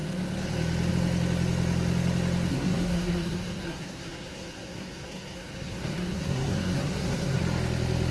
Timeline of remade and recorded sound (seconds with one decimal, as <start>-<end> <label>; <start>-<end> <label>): 0.0-2.5 recorded; 2.5-7.4 remade; 7.4-8.1 recorded